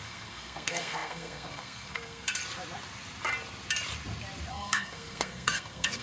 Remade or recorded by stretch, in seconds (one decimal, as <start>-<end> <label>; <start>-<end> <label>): 0.0-2.4 remade; 2.4-4.5 recorded; 4.5-6.0 remade